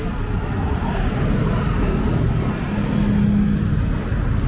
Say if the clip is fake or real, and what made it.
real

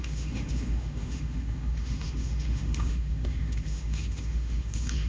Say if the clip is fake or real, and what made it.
fake, autoencoder, DAC-VAE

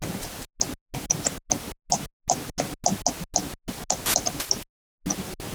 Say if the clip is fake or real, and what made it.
real